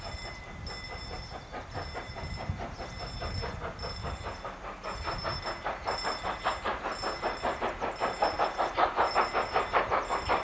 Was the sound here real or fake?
real